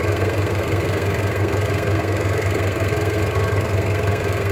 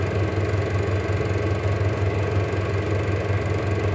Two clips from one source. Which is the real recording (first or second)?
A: second